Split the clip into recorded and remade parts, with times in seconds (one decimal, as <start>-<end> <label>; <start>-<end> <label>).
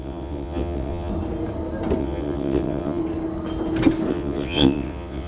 0.0-1.1 remade; 1.1-2.0 recorded; 2.0-3.0 remade; 3.0-4.1 recorded; 4.1-5.3 remade